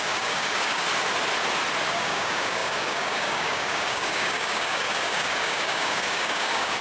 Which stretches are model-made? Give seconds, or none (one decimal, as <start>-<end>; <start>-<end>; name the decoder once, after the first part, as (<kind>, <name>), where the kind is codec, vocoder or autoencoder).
0.0-0.8 (codec, DAC); 1.9-6.8

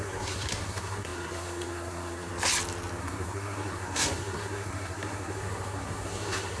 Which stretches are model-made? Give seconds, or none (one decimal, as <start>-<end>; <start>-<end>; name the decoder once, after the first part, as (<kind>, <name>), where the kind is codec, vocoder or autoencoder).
0.0-2.3 (codec, SNAC); 3.0-6.6

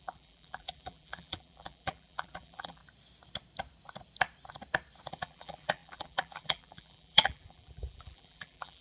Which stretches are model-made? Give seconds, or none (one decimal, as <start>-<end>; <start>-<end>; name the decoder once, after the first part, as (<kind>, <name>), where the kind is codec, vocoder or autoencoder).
0.0-2.8 (vocoder, BigVGAN v2); 5.1-8.8

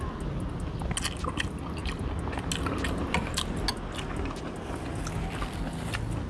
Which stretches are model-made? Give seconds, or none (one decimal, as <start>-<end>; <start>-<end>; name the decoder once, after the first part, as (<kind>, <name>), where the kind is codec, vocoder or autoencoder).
none

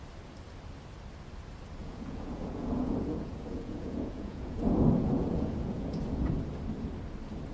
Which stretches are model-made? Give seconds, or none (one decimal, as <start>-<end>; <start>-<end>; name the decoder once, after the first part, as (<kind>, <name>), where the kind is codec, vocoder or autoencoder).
1.8-6.3 (vocoder, Vocos)

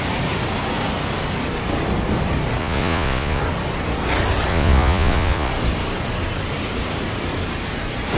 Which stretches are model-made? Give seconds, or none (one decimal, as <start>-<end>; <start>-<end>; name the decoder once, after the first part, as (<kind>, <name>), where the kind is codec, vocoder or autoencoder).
2.6-3.4 (vocoder, Vocos); 4.5-5.5

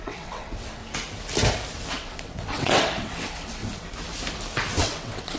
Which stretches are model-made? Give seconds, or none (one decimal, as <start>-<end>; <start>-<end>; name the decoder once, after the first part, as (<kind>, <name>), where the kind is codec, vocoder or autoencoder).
0.0-0.8 (vocoder, WaveNeXt); 1.9-3.6; 4.8-5.4

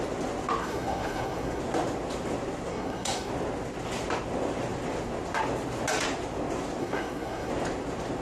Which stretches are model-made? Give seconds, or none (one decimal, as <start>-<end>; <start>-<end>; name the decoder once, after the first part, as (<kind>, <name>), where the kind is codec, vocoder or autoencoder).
0.6-1.6 (codec, SNAC); 2.7-3.3; 6.8-7.5